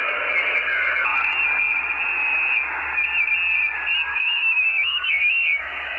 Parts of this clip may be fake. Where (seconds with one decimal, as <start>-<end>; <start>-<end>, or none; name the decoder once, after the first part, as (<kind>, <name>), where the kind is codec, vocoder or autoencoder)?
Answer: 4.1-6.0 (autoencoder, DAC-VAE)